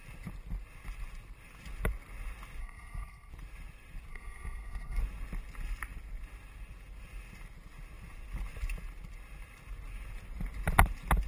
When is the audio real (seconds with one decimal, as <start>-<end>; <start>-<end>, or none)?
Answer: 0.0-2.6; 3.3-4.1; 5.0-11.3